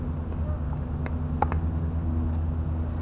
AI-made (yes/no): no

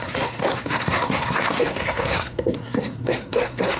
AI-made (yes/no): yes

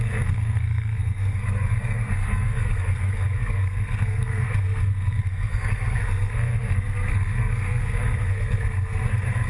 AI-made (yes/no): yes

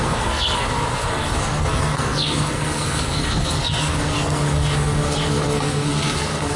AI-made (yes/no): yes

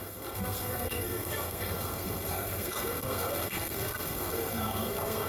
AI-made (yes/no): yes